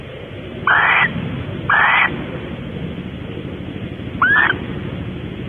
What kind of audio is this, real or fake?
real